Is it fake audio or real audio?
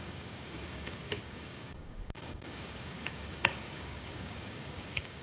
fake